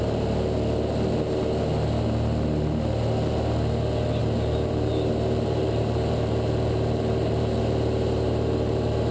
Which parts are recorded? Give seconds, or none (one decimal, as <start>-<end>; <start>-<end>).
0.0-4.2